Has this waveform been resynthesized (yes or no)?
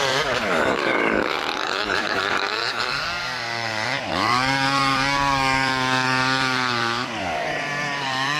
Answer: yes